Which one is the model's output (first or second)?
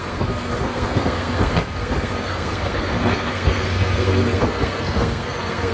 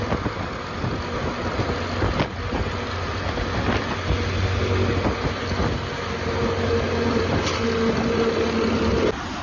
first